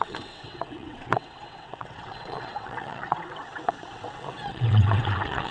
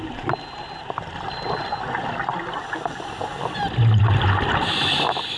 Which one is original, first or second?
second